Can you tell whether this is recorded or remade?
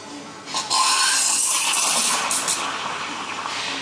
recorded